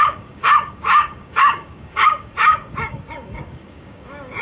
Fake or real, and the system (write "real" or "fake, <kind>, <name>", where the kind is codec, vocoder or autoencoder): fake, codec, DAC